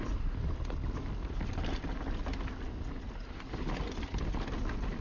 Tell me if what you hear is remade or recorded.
recorded